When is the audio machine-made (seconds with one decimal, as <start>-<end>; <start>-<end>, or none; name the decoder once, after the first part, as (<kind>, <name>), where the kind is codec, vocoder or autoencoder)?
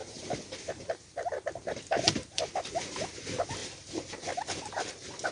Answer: 0.0-3.2 (vocoder, BigVGAN v2); 3.6-5.3